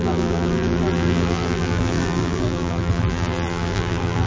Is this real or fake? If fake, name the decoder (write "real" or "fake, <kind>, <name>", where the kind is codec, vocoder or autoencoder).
fake, vocoder, BigVGAN v2